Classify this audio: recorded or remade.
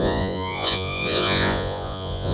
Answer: remade